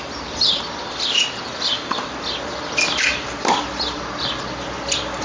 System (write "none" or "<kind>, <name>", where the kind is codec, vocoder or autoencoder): vocoder, BigVGAN v2